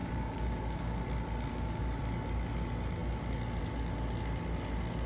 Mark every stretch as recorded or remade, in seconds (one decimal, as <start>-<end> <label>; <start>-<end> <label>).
0.0-1.0 remade; 1.0-1.5 recorded; 1.5-2.0 remade; 2.0-5.1 recorded